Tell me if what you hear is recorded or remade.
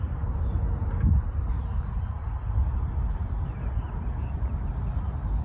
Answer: recorded